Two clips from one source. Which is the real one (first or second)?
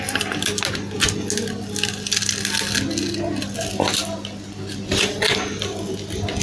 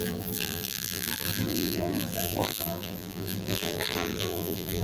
first